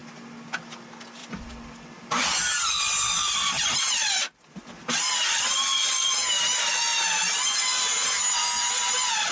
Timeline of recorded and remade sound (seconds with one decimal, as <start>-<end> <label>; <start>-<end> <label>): 0.0-1.2 recorded; 1.2-6.1 remade; 6.1-6.9 recorded; 6.9-7.9 remade; 7.9-9.3 recorded